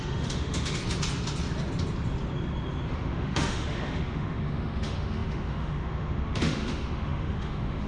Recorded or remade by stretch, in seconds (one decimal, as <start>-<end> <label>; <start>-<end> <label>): 0.0-0.8 remade; 0.8-2.9 recorded; 2.9-7.9 remade